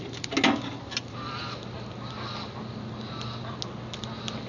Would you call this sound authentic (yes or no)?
yes